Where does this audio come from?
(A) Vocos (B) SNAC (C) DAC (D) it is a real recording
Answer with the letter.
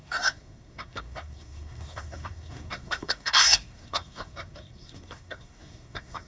B